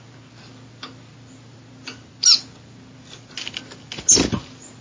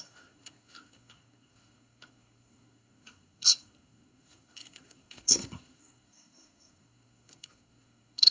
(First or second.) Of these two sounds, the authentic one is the first